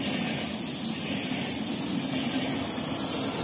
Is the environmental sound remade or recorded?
recorded